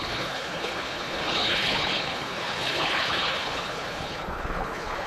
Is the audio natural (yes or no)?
no